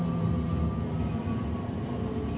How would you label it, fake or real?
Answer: real